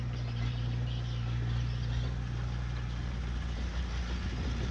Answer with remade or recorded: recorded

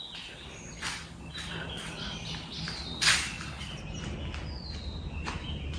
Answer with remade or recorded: recorded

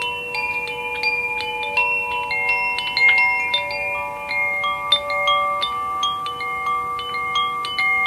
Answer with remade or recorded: recorded